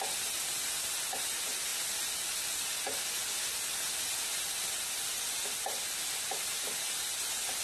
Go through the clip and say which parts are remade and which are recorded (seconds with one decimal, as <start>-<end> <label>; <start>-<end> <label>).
0.0-7.6 recorded